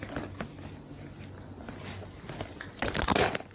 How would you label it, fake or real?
real